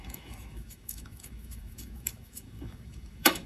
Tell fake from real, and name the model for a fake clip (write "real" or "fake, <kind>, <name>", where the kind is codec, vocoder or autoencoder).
fake, autoencoder, DAC-VAE